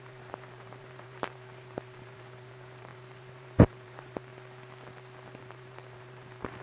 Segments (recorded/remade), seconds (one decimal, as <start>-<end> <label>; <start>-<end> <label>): 0.0-4.3 remade; 4.3-5.4 recorded; 5.4-6.6 remade